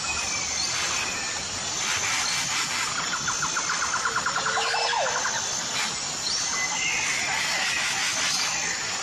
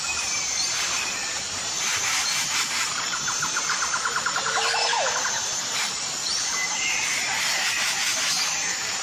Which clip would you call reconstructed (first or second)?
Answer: second